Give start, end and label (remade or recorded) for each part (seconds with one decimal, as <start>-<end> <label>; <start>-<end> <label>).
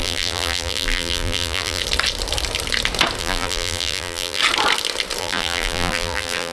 0.0-1.8 remade; 1.8-3.2 recorded; 3.2-4.4 remade; 4.4-5.2 recorded; 5.2-6.5 remade